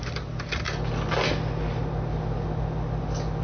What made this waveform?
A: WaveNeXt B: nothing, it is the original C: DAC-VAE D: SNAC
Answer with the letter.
B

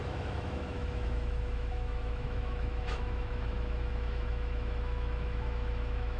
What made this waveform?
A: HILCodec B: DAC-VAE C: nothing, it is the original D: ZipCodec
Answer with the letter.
B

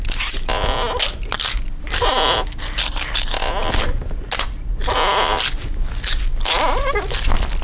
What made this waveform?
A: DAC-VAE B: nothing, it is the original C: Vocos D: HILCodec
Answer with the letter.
B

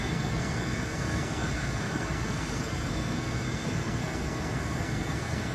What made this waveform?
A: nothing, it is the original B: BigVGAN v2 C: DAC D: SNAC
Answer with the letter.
D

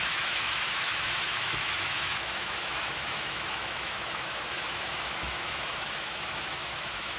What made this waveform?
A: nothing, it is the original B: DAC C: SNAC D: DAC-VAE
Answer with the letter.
D